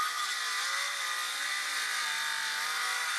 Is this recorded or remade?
recorded